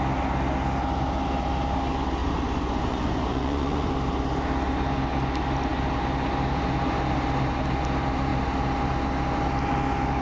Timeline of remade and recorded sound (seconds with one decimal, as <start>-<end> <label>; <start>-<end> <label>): 0.0-2.2 recorded; 2.2-3.9 remade; 3.9-10.2 recorded